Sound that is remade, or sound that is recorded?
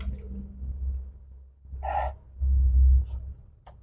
recorded